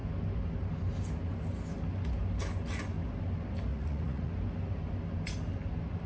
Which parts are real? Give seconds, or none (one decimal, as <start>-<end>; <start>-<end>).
0.0-3.7; 4.3-6.1